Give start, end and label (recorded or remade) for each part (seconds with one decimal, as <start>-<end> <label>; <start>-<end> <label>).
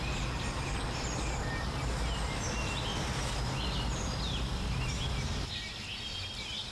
0.0-6.7 recorded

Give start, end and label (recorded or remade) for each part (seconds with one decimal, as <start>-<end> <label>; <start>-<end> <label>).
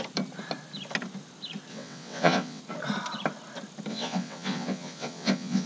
0.0-1.7 recorded; 1.7-2.6 remade; 2.6-3.9 recorded; 3.9-5.7 remade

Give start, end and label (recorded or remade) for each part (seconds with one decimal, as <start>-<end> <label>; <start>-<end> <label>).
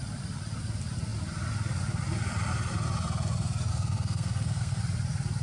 0.0-3.7 recorded; 3.7-4.8 remade; 4.8-5.4 recorded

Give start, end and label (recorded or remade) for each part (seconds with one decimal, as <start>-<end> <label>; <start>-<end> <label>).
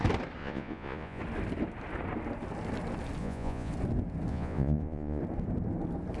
0.0-0.4 recorded; 0.4-1.2 remade; 1.2-3.2 recorded; 3.2-3.7 remade; 3.7-4.3 recorded; 4.3-5.2 remade; 5.2-6.2 recorded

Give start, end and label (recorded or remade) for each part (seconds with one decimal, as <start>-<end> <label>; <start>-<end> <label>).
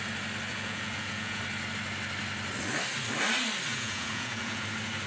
0.0-0.5 recorded; 0.5-1.4 remade; 1.4-3.7 recorded; 3.7-4.6 remade; 4.6-5.1 recorded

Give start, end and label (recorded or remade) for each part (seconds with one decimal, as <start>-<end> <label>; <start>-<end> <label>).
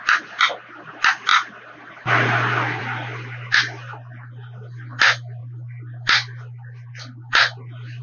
0.0-8.0 recorded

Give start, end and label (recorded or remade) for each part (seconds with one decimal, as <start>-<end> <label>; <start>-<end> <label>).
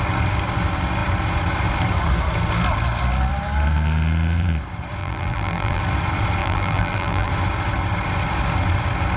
0.0-5.0 recorded; 5.0-5.8 remade; 5.8-6.4 recorded; 6.4-7.3 remade; 7.3-9.2 recorded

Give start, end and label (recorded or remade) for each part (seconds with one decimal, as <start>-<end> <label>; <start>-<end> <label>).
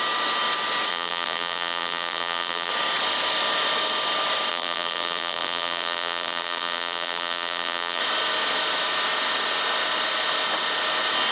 0.0-0.9 recorded; 0.9-2.7 remade; 2.7-4.5 recorded; 4.5-8.0 remade; 8.0-11.3 recorded